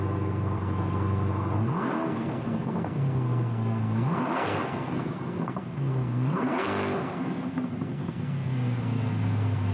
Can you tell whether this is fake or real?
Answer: fake